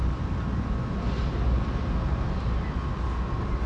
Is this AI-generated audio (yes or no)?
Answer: no